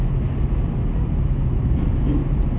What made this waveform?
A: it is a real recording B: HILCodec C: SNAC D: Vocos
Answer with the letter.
A